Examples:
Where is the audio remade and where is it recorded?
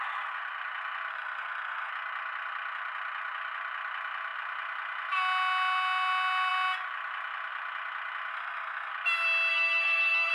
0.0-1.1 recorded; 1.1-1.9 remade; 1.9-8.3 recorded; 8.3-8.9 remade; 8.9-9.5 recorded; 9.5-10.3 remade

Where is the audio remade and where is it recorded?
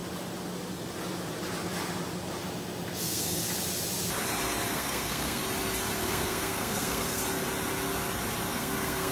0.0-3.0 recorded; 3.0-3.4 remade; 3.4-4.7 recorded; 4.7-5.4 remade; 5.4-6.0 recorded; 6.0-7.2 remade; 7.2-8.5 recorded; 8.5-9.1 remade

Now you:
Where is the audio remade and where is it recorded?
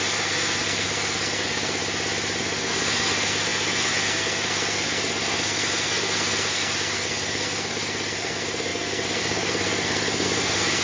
0.0-1.8 remade; 1.8-2.4 recorded; 2.4-10.8 remade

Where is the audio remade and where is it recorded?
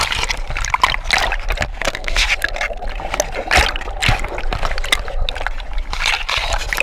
0.0-1.7 recorded; 1.7-2.3 remade; 2.3-6.8 recorded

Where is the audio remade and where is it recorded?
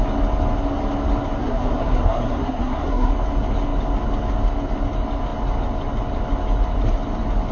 0.0-1.4 recorded; 1.4-3.1 remade; 3.1-7.5 recorded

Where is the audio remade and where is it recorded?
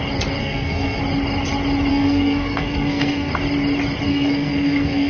0.0-0.4 recorded; 0.4-1.0 remade; 1.0-1.9 recorded; 1.9-3.3 remade; 3.3-4.1 recorded; 4.1-5.1 remade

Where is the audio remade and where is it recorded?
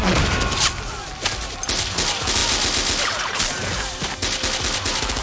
0.0-5.2 recorded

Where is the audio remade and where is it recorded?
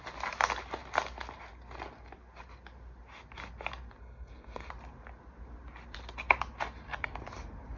0.0-4.0 recorded; 4.0-4.7 remade; 4.7-7.8 recorded